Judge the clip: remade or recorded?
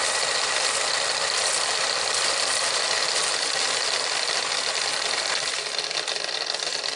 recorded